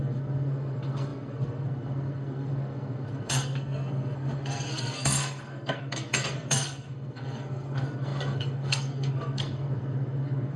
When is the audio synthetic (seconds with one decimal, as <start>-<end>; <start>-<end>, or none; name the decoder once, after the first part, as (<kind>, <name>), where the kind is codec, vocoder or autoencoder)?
0.0-10.6 (codec, SNAC)

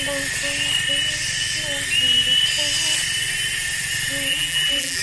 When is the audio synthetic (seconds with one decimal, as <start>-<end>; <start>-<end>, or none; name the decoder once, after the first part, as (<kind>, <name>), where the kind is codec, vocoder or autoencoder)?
4.3-5.0 (vocoder, BigVGAN v2)

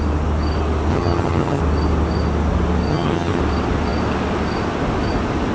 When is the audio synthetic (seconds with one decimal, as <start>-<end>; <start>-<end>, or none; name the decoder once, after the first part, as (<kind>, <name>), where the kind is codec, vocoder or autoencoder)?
0.9-1.6 (vocoder, HiFi-GAN); 2.9-3.4

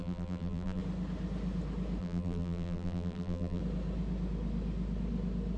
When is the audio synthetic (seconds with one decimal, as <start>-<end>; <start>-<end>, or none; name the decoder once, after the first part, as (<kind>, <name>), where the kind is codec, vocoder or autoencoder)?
0.0-0.8 (vocoder, BigVGAN v2); 2.0-3.6

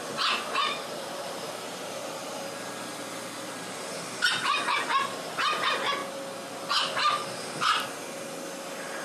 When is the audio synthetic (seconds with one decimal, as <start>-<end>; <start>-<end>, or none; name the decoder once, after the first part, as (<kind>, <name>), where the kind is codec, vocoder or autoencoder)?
0.6-2.6 (vocoder, BigVGAN v2)

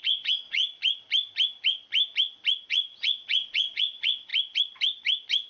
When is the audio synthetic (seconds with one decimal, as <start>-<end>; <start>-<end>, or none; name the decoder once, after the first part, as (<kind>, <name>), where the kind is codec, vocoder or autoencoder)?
0.0-0.6 (vocoder, Vocos); 2.7-4.3

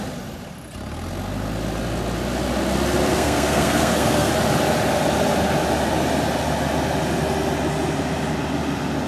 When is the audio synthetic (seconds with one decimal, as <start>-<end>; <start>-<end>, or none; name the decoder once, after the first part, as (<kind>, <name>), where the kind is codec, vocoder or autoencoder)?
3.1-4.3 (codec, SNAC)

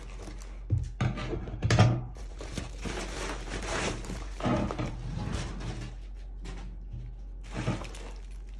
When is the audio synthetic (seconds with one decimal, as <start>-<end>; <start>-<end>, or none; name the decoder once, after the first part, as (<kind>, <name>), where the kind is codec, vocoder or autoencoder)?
1.3-5.5 (vocoder, BigVGAN v2)